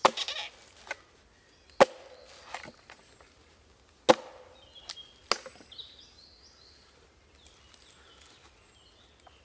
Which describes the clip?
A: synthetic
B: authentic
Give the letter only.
B